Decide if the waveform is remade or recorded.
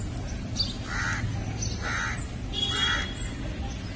recorded